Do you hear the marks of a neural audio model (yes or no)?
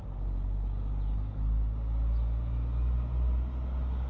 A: no